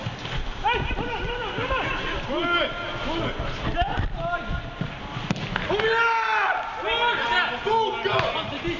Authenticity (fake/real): real